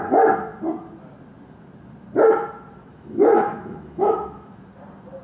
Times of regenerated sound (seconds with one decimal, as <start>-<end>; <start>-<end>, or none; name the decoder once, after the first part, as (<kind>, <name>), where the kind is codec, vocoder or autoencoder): 2.9-4.6 (autoencoder, DAC-VAE)